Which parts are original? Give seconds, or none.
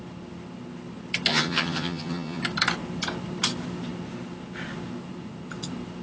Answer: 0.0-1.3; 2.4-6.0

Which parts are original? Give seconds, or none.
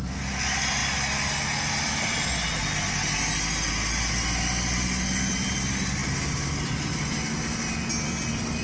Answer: 0.0-8.6